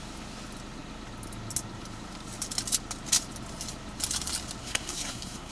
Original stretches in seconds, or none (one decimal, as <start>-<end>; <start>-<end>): 0.0-4.6